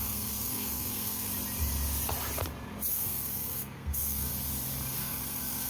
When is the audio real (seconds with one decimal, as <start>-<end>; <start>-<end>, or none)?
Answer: 1.3-2.9; 4.3-4.9